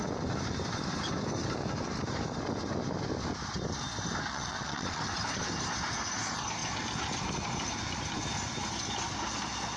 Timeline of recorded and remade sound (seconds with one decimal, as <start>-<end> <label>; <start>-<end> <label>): 0.0-4.3 recorded; 4.3-5.0 remade; 5.0-9.8 recorded